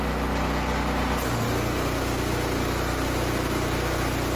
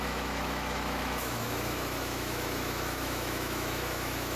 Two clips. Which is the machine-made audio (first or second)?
second